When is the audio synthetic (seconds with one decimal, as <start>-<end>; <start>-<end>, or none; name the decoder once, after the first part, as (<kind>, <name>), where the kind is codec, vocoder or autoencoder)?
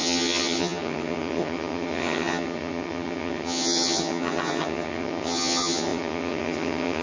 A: 0.0-7.0 (vocoder, HiFi-GAN)